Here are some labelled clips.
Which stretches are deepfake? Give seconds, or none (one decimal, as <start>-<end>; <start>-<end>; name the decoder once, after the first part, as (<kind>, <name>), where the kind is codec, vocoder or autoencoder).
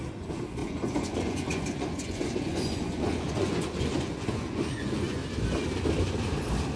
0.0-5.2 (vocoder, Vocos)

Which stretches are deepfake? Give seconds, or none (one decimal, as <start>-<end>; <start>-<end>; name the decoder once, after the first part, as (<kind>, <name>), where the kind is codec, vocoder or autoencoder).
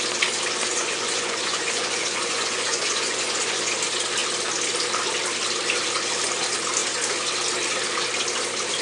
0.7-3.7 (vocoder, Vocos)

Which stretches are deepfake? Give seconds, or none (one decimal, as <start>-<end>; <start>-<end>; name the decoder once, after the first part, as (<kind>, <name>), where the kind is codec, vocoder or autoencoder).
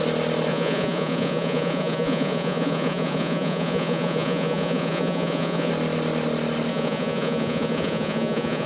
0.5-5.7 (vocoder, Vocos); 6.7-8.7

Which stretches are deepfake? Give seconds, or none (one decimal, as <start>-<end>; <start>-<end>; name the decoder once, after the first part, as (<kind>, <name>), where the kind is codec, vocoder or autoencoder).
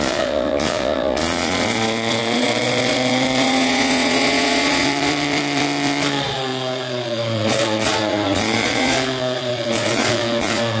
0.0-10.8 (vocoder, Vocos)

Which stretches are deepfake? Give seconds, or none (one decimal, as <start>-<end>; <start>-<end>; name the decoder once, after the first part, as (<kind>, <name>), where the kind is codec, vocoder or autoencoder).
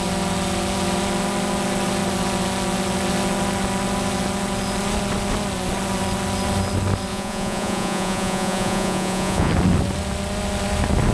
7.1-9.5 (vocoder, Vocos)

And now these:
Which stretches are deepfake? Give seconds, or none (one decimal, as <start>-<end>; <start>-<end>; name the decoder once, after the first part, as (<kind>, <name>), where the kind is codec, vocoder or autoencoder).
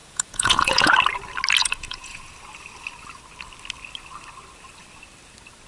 0.0-0.9 (vocoder, Vocos); 1.6-2.3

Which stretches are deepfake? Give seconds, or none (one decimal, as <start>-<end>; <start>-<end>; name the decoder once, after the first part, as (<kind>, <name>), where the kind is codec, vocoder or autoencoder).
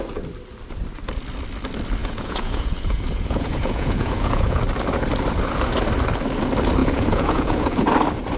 2.0-4.6 (vocoder, Vocos); 6.8-7.9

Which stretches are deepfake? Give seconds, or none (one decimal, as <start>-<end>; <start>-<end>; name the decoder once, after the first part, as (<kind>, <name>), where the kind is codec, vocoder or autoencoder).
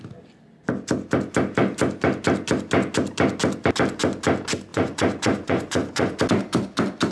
4.7-6.2 (vocoder, Vocos)